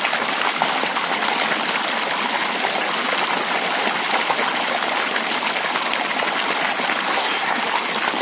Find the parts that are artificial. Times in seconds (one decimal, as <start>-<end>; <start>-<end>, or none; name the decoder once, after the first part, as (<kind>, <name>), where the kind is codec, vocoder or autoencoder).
7.1-7.6 (codec, SNAC)